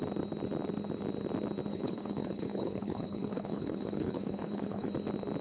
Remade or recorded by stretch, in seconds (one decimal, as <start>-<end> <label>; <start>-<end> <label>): 0.0-1.7 recorded; 1.7-4.9 remade; 4.9-5.4 recorded